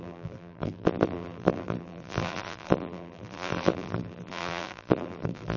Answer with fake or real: fake